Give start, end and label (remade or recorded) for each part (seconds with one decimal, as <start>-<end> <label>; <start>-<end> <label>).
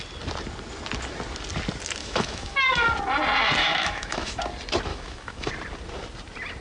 0.0-2.0 recorded; 2.0-2.6 remade; 2.6-3.6 recorded; 3.6-4.4 remade; 4.4-4.9 recorded; 4.9-5.5 remade; 5.5-6.6 recorded